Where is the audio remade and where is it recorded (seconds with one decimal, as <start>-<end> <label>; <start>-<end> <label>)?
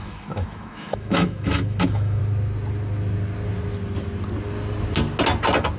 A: 0.0-2.2 remade; 2.2-5.8 recorded